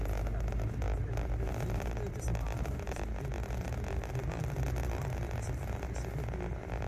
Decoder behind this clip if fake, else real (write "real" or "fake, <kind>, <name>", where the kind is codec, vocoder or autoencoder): real